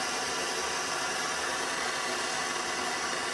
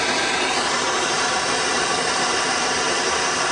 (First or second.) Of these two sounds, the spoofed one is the second